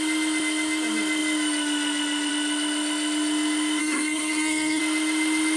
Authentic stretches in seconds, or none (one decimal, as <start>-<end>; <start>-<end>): 0.0-3.8; 4.8-5.6